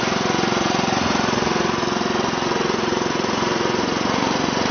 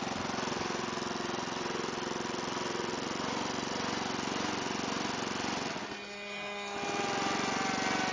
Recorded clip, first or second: second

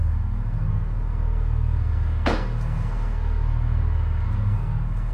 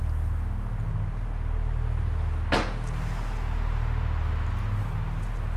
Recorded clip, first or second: second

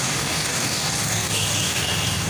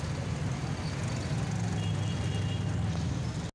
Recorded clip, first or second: second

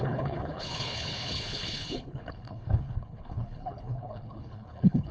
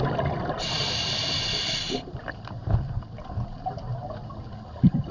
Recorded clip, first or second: second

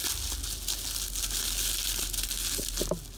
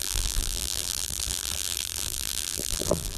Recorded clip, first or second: first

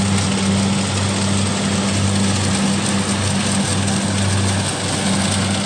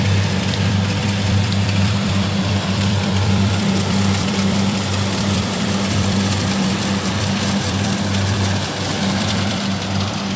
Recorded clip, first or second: first